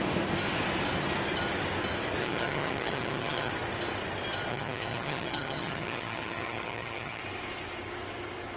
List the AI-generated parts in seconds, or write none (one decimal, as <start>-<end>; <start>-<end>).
2.2-3.5; 4.5-7.2